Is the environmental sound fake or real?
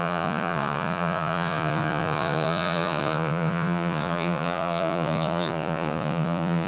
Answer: fake